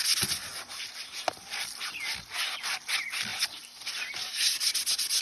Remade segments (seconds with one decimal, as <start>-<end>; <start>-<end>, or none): none